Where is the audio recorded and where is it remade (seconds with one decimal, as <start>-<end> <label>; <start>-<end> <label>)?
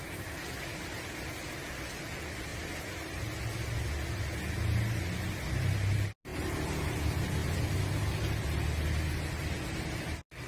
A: 0.0-6.3 recorded; 6.3-6.8 remade; 6.8-10.5 recorded